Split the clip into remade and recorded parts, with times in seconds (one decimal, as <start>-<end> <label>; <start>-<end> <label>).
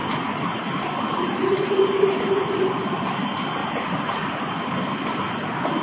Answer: 0.0-3.6 recorded; 3.6-4.5 remade; 4.5-5.8 recorded